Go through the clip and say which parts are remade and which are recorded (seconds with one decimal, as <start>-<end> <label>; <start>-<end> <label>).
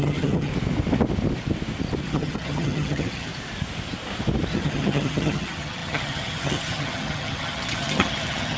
0.0-0.5 remade; 0.5-2.0 recorded; 2.0-3.3 remade; 3.3-4.5 recorded; 4.5-8.6 remade